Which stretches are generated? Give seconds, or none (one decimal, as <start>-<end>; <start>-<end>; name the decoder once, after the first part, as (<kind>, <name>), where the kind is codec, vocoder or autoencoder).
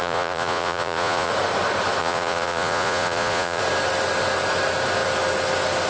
0.0-1.3 (vocoder, Vocos); 2.0-3.6